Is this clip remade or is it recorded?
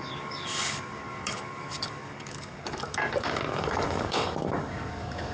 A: remade